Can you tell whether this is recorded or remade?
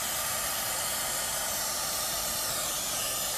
remade